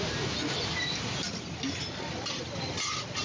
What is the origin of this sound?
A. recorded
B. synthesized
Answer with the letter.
A